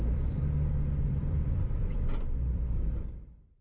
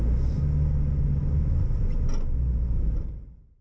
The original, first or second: second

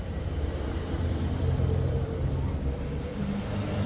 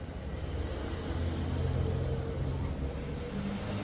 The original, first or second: second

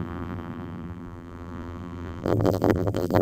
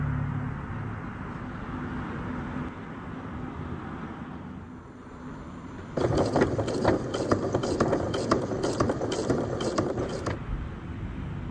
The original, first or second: second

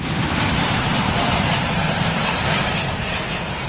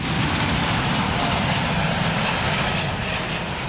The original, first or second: second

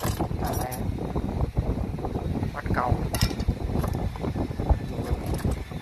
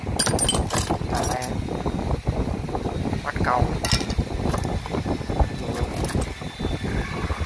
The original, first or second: second